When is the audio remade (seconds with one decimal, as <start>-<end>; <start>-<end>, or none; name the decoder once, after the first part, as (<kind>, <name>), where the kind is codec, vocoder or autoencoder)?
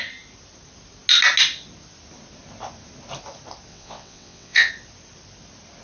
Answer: 3.7-4.7 (vocoder, WaveNeXt)